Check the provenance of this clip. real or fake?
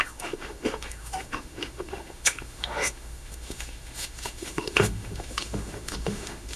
fake